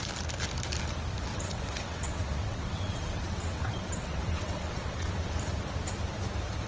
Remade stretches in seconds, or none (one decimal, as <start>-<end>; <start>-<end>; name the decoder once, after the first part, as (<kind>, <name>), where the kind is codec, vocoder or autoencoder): 1.3-5.3 (vocoder, WaveNeXt)

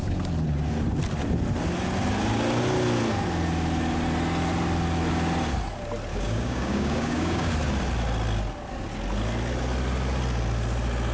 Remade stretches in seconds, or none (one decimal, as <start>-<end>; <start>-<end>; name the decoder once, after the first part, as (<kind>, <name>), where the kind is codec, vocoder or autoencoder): 6.1-7.5 (codec, DAC)

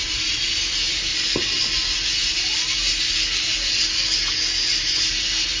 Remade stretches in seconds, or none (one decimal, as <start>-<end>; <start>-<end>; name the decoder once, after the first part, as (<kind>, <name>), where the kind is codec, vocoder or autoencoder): 0.0-1.1 (vocoder, BigVGAN v2); 4.5-5.6

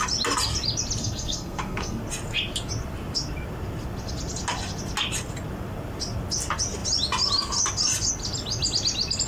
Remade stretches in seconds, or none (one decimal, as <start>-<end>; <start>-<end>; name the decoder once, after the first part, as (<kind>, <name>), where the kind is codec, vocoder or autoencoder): 1.0-2.0 (codec, SNAC)

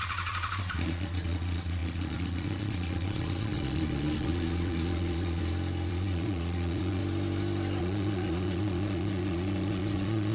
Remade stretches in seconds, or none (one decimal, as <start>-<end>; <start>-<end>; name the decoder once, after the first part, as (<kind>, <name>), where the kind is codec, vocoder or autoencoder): 0.0-5.4 (vocoder, Vocos); 5.9-7.0; 7.8-10.3

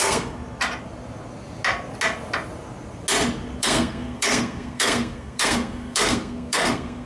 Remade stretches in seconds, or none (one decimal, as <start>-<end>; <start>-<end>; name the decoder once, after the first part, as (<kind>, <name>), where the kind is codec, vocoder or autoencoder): 0.0-0.4 (codec, SNAC); 3.6-7.1

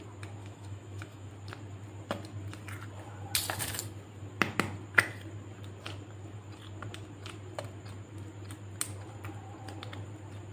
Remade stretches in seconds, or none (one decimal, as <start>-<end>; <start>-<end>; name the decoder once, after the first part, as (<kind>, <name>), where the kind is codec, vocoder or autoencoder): 0.4-1.3 (autoencoder, DAC-VAE)